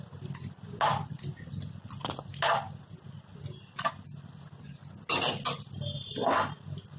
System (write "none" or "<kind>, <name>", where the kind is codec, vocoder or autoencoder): none